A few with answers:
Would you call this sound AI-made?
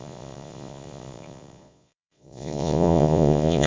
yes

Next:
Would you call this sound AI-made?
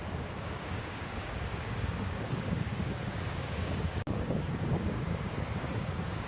yes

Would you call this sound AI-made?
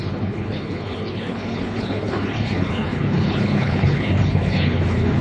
yes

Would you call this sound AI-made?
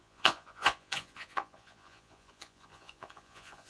yes